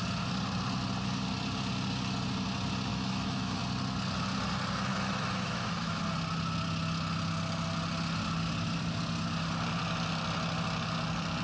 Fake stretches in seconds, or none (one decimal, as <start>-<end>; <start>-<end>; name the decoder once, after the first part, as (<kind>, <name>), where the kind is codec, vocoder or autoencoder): 2.9-3.6 (autoencoder, DAC-VAE); 4.9-6.0